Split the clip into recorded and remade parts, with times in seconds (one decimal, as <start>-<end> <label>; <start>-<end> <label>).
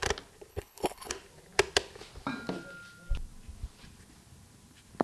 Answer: 0.0-0.5 recorded; 0.5-1.1 remade; 1.1-5.0 recorded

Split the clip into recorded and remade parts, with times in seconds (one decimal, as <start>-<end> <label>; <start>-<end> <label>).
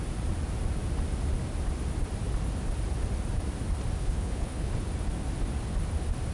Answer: 0.0-4.0 recorded; 4.0-4.7 remade; 4.7-6.3 recorded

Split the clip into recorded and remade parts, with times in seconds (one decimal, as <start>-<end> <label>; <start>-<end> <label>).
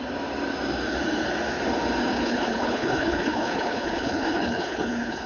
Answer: 0.0-2.1 recorded; 2.1-5.3 remade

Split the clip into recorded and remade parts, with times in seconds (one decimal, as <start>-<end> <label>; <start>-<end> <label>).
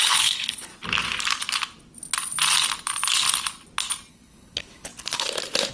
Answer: 0.0-0.7 remade; 0.7-4.1 recorded; 4.1-4.9 remade; 4.9-5.7 recorded